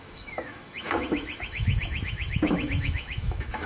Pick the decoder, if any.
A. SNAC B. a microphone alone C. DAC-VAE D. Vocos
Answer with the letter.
C